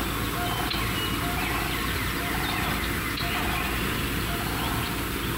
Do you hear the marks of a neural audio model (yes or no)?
no